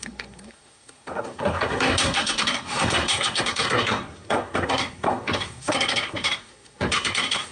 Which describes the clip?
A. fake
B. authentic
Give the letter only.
A